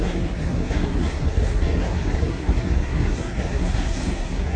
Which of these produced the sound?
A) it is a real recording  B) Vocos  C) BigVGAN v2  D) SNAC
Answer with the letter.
D